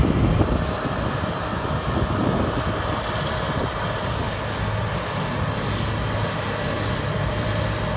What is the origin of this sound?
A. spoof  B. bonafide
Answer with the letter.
B